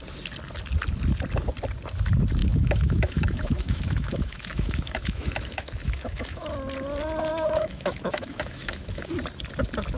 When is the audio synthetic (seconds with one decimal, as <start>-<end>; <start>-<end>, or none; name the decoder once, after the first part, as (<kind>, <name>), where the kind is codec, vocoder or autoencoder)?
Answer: 2.4-6.5 (autoencoder, DAC-VAE); 7.3-9.1